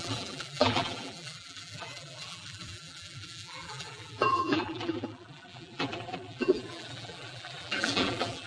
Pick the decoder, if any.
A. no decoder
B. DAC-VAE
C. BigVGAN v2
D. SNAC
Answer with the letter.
C